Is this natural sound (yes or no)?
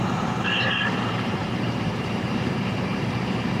no